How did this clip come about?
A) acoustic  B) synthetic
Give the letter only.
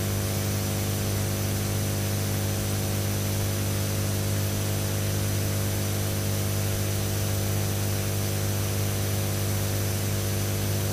A